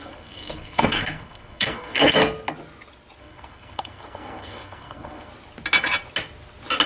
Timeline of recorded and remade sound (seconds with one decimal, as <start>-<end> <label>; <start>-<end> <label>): 0.0-2.2 remade; 2.2-3.2 recorded; 3.2-5.3 remade; 5.3-6.9 recorded